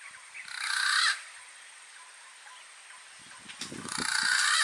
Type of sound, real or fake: real